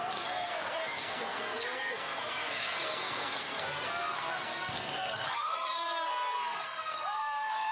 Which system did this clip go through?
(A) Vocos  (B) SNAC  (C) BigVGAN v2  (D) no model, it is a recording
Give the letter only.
B